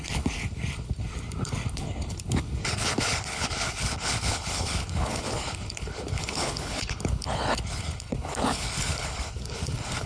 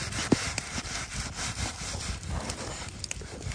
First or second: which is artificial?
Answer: first